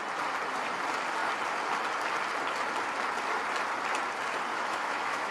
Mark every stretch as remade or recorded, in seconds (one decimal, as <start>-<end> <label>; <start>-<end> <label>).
0.0-4.5 recorded; 4.5-5.3 remade